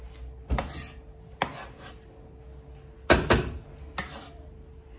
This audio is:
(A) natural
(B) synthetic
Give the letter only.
A